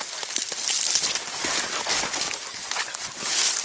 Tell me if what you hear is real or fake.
real